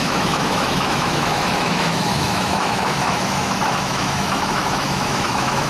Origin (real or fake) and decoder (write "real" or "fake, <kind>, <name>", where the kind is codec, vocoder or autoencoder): fake, autoencoder, DAC-VAE